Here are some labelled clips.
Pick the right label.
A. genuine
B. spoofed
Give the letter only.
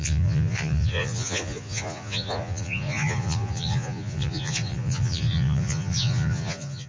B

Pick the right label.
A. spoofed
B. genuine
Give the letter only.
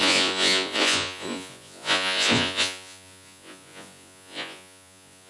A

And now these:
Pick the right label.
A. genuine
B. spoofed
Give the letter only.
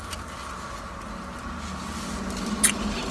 A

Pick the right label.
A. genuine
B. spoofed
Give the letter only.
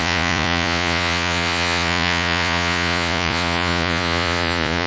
B